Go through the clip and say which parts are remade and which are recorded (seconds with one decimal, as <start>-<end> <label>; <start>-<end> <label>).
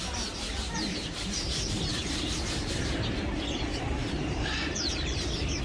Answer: 0.0-1.9 recorded; 1.9-2.8 remade; 2.8-4.0 recorded; 4.0-5.6 remade